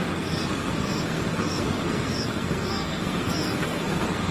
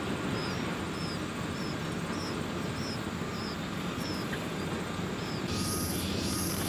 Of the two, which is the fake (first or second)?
first